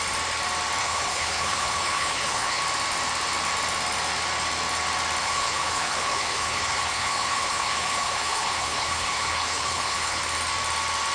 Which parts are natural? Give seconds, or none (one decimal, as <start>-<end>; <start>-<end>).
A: 0.0-0.8; 2.6-5.2; 10.2-11.1